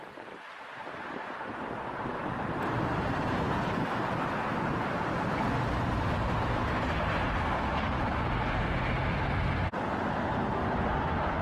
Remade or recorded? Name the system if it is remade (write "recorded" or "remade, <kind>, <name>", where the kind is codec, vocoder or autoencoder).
recorded